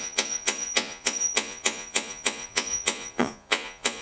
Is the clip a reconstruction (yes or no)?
yes